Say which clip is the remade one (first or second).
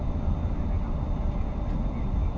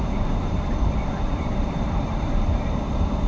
second